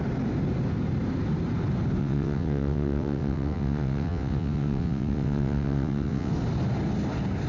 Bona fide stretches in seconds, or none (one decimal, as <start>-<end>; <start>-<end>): 0.0-2.0; 6.3-7.5